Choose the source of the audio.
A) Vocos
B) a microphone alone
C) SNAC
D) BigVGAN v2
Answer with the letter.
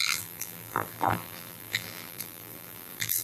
D